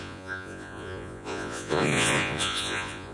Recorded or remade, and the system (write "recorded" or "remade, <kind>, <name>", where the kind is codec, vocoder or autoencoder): remade, vocoder, Vocos